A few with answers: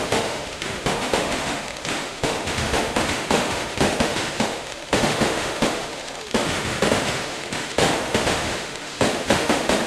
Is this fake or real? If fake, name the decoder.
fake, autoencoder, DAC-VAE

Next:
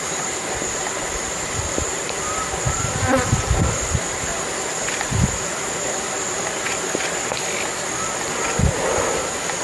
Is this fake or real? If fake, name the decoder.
real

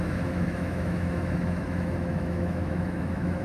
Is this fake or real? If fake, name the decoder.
fake, autoencoder, DAC-VAE